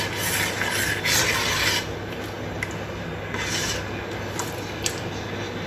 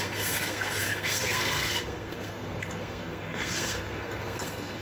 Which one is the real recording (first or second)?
first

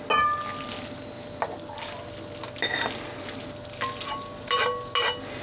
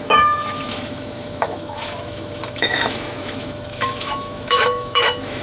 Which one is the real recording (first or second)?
first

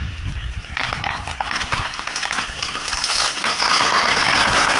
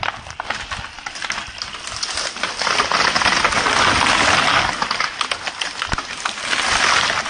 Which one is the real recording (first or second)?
second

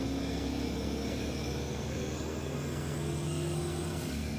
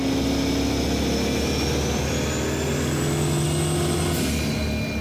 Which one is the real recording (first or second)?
second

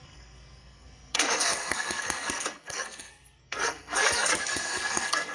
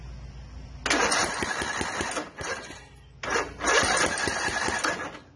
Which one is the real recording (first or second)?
second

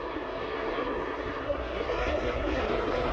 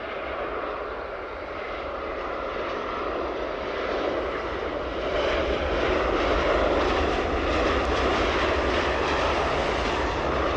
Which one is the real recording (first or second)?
second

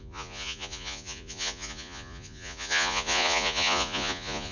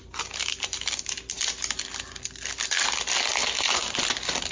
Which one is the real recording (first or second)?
second